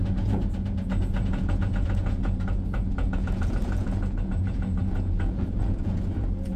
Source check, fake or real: fake